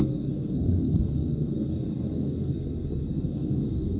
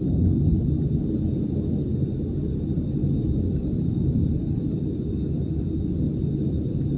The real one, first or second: second